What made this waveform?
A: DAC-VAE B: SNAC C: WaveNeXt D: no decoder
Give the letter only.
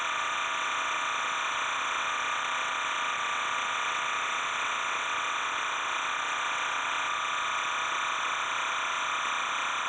C